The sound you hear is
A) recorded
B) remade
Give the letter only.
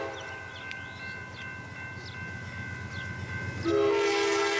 A